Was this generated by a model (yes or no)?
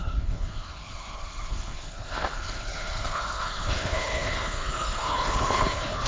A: yes